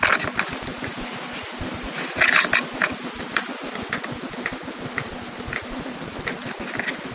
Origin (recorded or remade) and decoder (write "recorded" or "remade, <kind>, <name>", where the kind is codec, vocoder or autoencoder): recorded